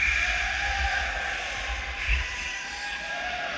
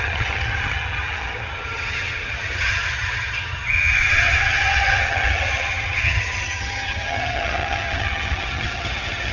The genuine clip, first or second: first